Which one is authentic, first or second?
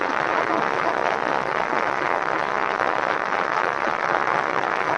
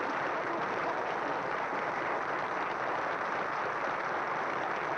second